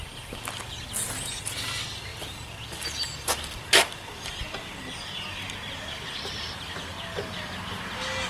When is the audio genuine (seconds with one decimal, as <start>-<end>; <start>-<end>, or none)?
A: 0.0-8.3